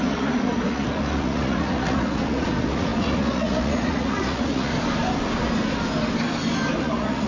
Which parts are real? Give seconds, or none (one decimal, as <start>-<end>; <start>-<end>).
4.7-6.8